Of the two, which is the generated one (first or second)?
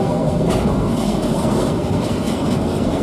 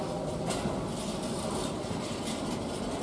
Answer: first